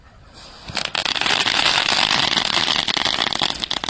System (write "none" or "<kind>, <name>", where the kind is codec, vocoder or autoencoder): vocoder, BigVGAN v2